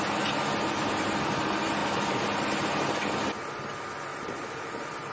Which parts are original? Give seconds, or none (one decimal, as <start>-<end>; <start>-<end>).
0.0-1.8; 2.4-4.1